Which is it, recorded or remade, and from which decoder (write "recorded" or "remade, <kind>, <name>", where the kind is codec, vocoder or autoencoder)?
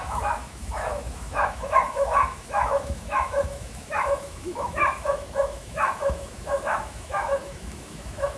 remade, autoencoder, DAC-VAE